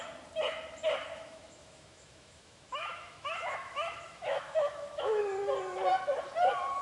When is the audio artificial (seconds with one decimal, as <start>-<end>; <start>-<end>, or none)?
1.1-5.2

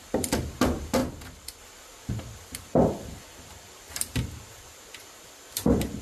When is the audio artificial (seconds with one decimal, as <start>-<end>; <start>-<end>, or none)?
none

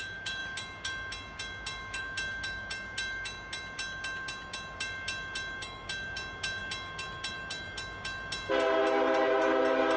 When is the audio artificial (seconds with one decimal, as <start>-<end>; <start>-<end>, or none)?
none

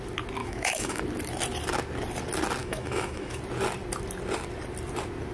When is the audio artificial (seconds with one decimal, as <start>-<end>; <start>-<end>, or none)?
0.4-1.0; 2.6-3.4